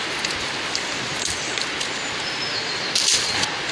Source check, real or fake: real